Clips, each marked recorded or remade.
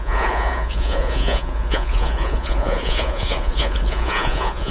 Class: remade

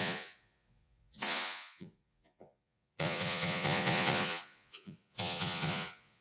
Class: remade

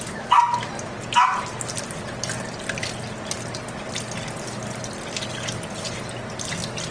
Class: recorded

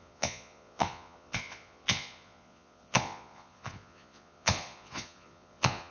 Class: remade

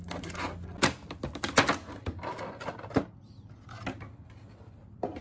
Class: recorded